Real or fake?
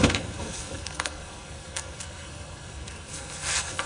fake